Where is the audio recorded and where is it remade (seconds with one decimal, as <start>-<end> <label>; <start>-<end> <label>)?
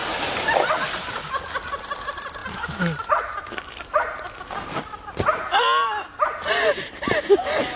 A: 0.0-7.8 recorded